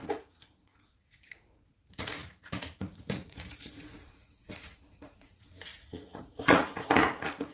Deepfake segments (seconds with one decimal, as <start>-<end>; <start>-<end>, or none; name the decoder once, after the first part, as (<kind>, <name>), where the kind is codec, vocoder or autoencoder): 0.0-7.5 (vocoder, Vocos)

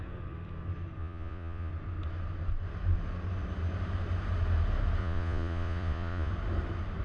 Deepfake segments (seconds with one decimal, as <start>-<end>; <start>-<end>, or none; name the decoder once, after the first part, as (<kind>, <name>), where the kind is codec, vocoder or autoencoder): 1.0-1.7 (vocoder, Vocos); 5.0-6.3

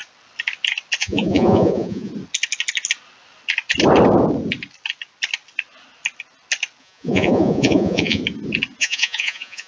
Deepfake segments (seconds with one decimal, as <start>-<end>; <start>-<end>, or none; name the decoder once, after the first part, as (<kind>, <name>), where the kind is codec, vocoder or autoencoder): 1.0-2.1 (vocoder, Vocos); 6.8-8.2; 8.8-9.7

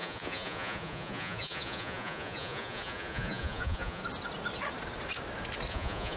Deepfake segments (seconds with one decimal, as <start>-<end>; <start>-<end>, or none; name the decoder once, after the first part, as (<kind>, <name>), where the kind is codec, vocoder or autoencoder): 0.0-4.0 (vocoder, Vocos); 5.7-6.2

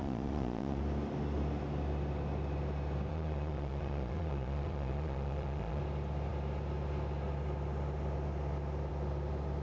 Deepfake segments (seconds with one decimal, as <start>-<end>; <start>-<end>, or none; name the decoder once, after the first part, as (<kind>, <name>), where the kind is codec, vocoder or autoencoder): 0.0-0.8 (vocoder, Vocos); 3.1-5.8

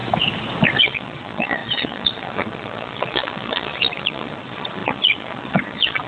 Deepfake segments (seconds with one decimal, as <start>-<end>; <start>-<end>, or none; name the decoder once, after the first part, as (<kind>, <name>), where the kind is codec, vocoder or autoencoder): 0.8-6.1 (vocoder, Vocos)

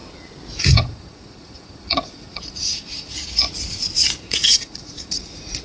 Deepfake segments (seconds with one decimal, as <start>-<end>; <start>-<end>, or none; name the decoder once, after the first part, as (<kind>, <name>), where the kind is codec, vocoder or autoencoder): 0.6-3.4 (vocoder, Vocos); 4.2-5.6